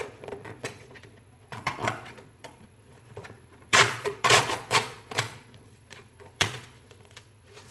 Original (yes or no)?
no